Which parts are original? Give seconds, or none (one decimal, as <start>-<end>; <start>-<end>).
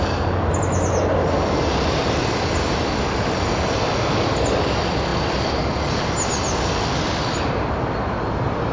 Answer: 0.0-8.7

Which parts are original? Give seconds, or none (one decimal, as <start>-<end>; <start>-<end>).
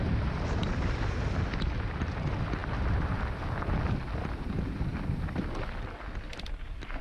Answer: 0.0-7.0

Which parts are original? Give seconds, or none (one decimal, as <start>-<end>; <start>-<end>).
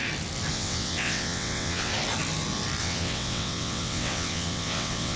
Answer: 0.0-0.5; 1.9-2.8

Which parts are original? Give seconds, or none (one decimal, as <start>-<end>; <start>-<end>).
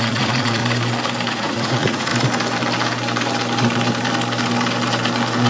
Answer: 0.6-1.3; 2.1-5.5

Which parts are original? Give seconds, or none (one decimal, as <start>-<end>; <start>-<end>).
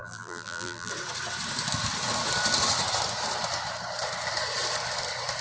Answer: 0.9-5.4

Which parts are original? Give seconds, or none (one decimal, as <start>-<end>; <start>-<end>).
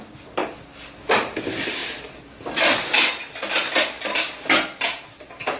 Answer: 0.0-5.6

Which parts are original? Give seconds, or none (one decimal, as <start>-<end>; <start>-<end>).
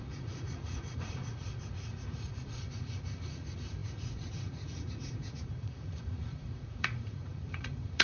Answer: none